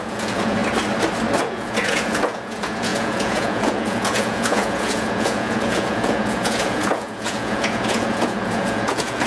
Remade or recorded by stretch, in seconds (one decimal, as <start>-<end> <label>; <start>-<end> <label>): 0.0-0.6 remade; 0.6-1.4 recorded; 1.4-9.3 remade